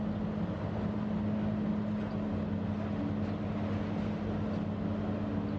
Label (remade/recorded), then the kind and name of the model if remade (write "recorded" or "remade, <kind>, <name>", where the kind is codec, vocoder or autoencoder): recorded